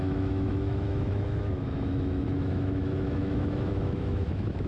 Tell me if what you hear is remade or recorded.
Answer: remade